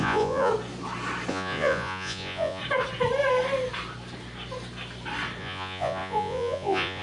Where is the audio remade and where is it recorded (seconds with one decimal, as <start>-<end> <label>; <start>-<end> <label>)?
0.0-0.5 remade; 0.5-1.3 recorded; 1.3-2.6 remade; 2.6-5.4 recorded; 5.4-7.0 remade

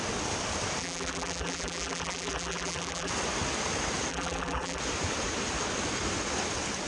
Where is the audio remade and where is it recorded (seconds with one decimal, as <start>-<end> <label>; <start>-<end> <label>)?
0.0-0.8 recorded; 0.8-3.1 remade; 3.1-4.1 recorded; 4.1-4.8 remade; 4.8-6.9 recorded

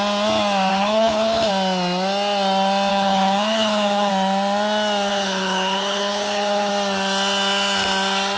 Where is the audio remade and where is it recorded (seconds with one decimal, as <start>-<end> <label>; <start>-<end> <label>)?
0.0-0.7 recorded; 0.7-1.5 remade; 1.5-2.9 recorded; 2.9-4.1 remade; 4.1-5.1 recorded; 5.1-6.7 remade; 6.7-8.4 recorded